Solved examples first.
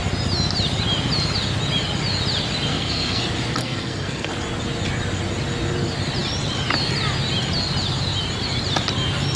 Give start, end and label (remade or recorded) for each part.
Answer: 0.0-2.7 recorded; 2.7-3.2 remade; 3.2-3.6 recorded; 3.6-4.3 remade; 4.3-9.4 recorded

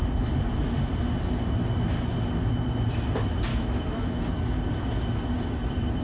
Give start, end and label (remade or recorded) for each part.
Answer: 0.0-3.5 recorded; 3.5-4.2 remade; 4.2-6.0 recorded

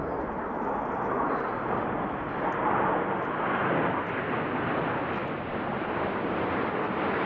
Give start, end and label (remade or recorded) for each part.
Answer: 0.0-7.3 recorded